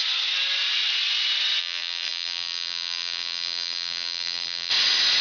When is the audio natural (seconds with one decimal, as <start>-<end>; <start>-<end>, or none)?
0.0-1.6; 4.7-5.2